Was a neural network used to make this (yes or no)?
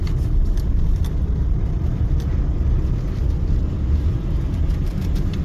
yes